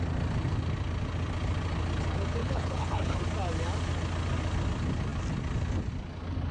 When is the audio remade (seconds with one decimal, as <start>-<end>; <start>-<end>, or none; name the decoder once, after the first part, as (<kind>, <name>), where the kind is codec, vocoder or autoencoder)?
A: 2.4-3.2 (codec, HILCodec)